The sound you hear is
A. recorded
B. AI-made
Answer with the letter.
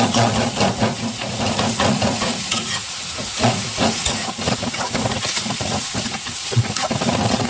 B